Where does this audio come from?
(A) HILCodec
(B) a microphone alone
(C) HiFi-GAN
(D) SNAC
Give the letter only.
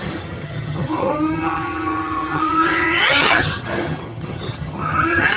C